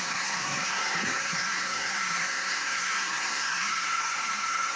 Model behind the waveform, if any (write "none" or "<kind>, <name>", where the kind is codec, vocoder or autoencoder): codec, SNAC